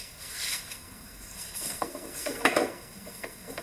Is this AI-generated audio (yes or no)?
yes